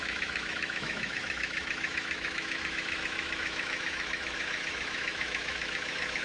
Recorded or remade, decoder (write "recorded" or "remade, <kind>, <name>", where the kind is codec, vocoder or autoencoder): remade, autoencoder, DAC-VAE